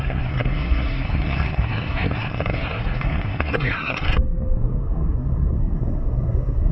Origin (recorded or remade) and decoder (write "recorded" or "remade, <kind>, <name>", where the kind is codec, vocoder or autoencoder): remade, codec, SNAC